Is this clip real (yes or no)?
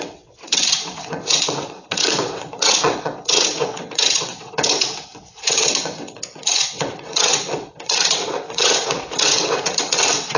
no